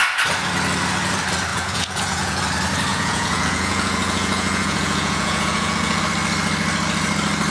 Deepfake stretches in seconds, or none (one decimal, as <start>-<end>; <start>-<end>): 1.5-2.4; 2.9-6.0